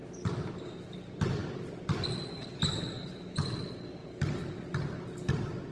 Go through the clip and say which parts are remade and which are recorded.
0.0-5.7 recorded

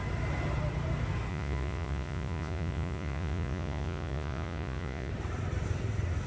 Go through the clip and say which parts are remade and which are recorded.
0.0-1.3 recorded; 1.3-5.1 remade; 5.1-6.3 recorded

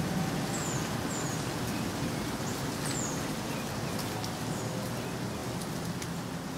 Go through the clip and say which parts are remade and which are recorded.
0.0-6.6 recorded

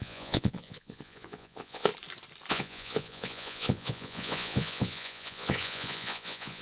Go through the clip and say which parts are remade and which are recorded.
0.0-1.9 remade; 1.9-2.5 recorded; 2.5-6.6 remade

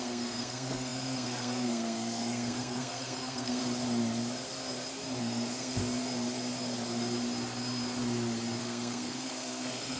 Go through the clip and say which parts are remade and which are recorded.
0.0-3.6 remade; 3.6-5.2 recorded; 5.2-5.8 remade; 5.8-8.6 recorded; 8.6-10.0 remade